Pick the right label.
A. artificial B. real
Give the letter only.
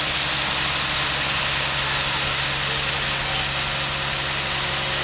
B